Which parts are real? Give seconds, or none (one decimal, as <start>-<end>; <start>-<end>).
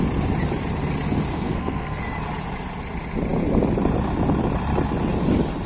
0.0-1.3; 2.0-5.7